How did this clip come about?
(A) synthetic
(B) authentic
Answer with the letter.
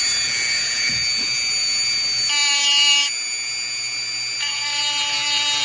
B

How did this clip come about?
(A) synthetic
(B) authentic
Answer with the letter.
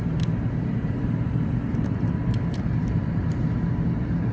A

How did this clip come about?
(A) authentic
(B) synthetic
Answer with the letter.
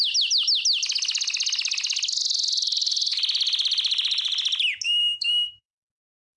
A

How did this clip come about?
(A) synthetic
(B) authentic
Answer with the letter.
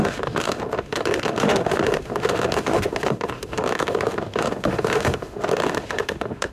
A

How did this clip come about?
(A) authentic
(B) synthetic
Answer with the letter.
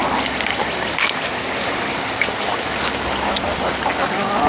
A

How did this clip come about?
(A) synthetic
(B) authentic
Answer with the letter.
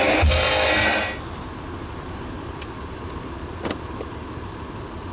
B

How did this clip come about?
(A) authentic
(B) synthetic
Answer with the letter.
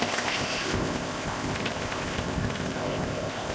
B